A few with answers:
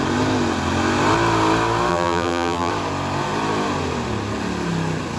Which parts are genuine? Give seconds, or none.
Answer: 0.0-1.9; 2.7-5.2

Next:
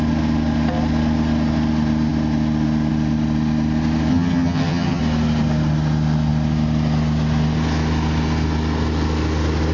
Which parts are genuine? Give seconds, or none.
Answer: 0.0-4.1; 5.0-9.7

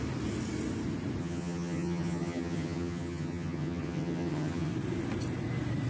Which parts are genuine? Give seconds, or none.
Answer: 0.0-1.2; 4.7-5.9

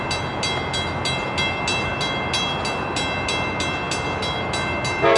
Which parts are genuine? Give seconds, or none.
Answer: 0.0-5.2

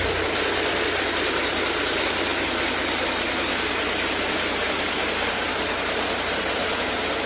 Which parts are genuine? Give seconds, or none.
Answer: 0.0-7.3